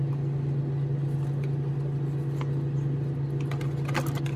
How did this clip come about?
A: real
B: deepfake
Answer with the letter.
A